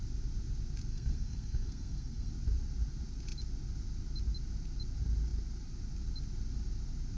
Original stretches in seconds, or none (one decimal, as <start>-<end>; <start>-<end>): 0.0-0.9; 2.3-7.2